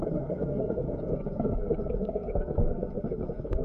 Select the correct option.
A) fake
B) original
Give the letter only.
A